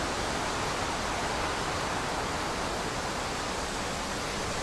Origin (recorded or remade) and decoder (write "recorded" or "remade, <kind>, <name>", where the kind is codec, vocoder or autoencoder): recorded